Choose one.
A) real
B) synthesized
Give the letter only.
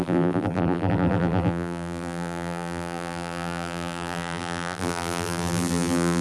B